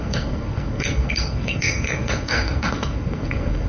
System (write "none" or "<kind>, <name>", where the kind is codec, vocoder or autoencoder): codec, SNAC